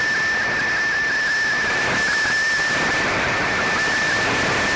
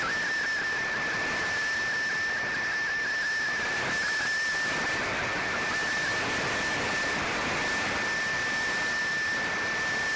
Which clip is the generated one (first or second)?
first